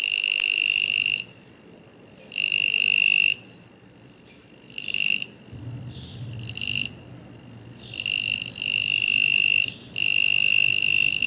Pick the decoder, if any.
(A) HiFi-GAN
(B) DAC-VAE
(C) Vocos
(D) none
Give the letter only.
D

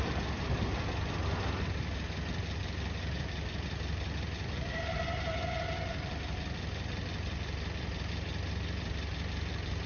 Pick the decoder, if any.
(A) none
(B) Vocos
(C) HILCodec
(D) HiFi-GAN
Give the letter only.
A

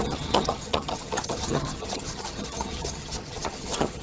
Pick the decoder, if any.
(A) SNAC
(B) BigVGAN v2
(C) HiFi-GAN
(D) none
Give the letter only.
C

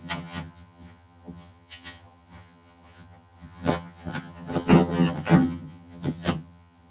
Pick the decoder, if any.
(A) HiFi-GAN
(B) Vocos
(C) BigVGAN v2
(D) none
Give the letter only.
A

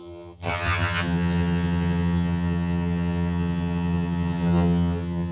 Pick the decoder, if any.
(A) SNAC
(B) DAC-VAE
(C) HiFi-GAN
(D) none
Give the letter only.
C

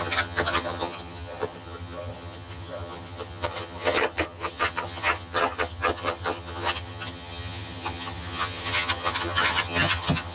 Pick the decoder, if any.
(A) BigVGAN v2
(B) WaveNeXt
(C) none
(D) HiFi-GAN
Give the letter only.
D